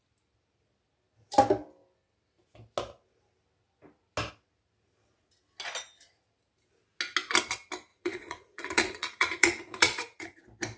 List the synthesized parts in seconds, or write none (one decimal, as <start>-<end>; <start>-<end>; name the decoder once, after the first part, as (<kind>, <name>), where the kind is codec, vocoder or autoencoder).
7.9-10.4 (vocoder, Vocos)